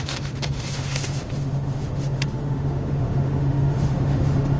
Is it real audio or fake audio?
fake